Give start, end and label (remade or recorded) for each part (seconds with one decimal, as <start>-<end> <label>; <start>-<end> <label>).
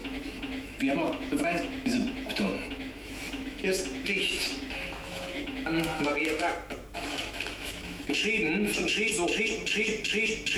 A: 0.0-10.6 remade